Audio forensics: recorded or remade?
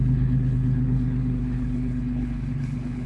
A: remade